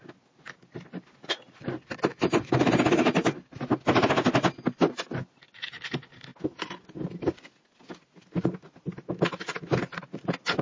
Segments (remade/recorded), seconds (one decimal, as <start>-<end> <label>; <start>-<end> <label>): 0.0-10.6 recorded